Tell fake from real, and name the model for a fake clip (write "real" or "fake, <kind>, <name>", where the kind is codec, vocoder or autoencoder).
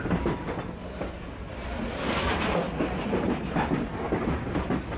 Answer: real